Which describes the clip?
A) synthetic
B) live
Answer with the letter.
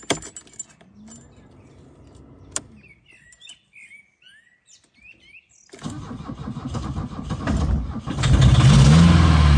B